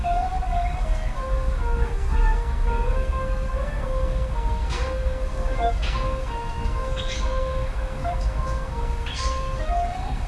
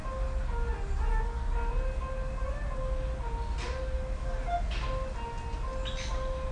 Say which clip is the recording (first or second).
second